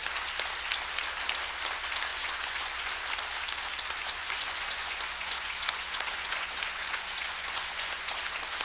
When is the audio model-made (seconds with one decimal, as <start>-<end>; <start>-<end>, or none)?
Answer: 2.1-2.9; 4.2-8.1